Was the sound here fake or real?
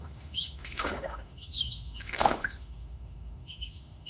fake